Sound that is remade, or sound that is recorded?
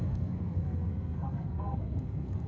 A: remade